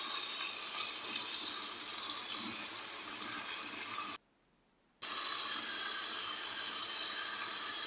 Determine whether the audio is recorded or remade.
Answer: recorded